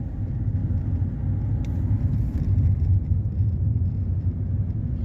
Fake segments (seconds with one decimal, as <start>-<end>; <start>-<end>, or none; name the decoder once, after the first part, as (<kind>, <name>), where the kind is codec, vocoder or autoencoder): none